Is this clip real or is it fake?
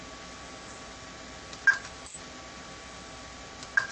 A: real